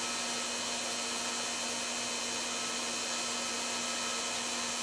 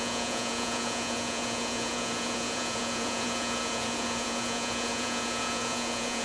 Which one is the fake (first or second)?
second